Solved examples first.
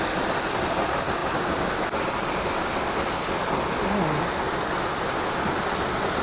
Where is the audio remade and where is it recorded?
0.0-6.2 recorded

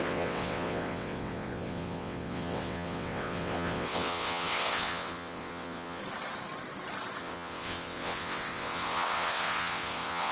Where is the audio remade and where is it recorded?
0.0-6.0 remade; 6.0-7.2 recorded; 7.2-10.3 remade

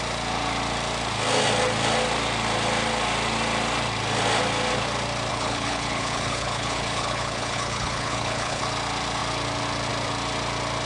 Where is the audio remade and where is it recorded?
0.0-5.3 recorded; 5.3-8.6 remade; 8.6-10.9 recorded